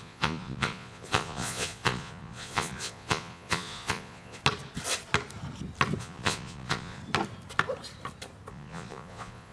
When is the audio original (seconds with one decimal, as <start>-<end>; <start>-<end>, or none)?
4.4-6.0; 7.0-8.5